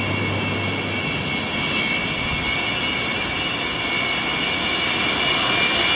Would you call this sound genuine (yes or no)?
yes